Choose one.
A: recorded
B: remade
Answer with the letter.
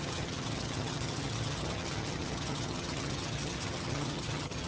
B